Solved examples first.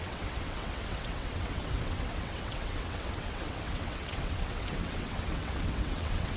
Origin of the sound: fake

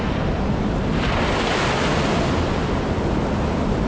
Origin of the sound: real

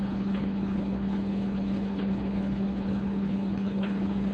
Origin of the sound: fake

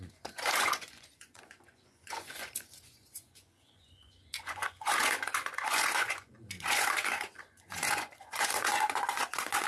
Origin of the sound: fake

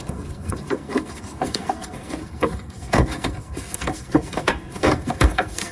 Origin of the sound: fake